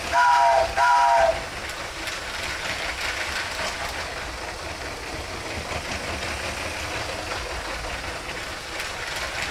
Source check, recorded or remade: recorded